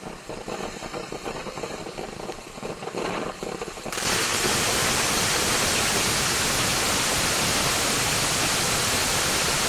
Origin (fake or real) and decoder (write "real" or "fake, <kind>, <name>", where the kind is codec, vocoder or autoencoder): real